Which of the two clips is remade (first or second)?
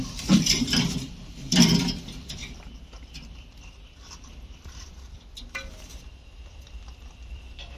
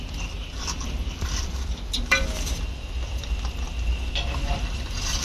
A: first